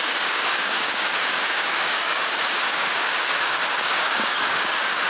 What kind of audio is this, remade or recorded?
remade